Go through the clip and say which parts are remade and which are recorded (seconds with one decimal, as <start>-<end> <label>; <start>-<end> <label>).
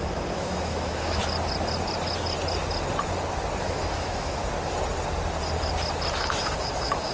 0.0-1.2 remade; 1.2-3.6 recorded; 3.6-4.4 remade; 4.4-6.1 recorded; 6.1-7.1 remade